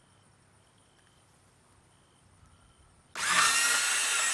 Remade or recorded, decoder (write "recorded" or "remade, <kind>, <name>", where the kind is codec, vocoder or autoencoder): recorded